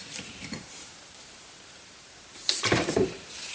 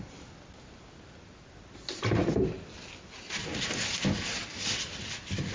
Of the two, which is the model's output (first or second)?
first